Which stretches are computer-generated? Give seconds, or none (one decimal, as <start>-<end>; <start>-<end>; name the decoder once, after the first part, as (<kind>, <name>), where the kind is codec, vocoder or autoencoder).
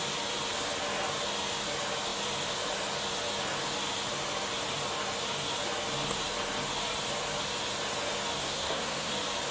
8.4-9.1 (codec, SNAC)